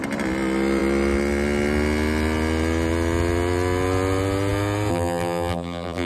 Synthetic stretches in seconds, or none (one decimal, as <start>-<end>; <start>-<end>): 4.9-6.1